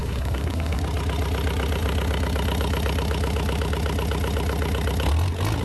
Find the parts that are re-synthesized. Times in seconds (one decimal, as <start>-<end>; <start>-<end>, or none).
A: 0.0-0.8